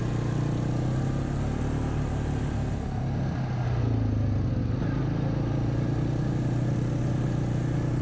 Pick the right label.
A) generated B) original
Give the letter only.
B